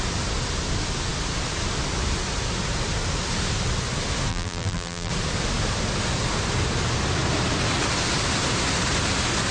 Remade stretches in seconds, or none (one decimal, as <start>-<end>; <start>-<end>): 4.3-5.1